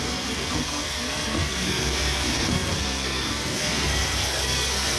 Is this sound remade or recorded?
remade